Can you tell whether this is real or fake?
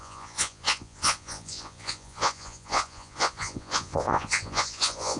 fake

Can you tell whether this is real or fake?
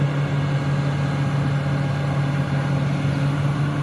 real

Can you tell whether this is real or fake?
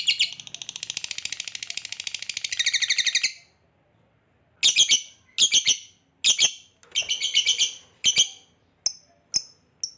real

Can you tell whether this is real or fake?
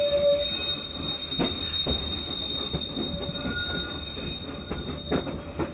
real